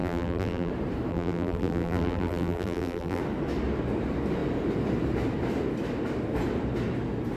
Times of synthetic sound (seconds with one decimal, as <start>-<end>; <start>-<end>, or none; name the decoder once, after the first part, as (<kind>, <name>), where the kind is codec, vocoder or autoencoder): 0.0-0.7 (vocoder, BigVGAN v2); 1.1-3.2